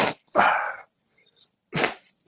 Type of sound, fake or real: real